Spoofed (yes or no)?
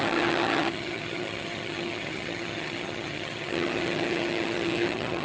yes